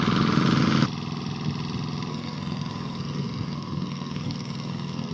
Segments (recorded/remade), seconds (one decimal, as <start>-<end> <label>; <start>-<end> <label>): 0.0-2.1 recorded; 2.1-5.1 remade

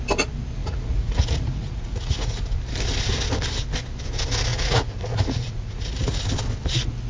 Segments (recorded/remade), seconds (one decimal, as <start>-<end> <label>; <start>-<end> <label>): 0.0-0.6 recorded; 0.6-2.6 remade; 2.6-4.5 recorded; 4.5-6.2 remade; 6.2-7.1 recorded

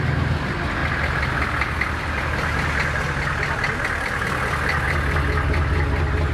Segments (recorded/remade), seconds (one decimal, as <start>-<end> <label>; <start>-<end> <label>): 0.0-6.3 recorded

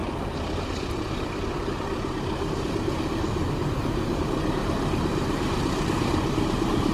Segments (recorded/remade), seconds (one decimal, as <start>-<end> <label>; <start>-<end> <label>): 0.0-2.7 remade; 2.7-3.4 recorded; 3.4-6.9 remade